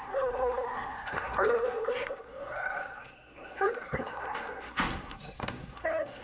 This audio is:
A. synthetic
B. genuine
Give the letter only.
A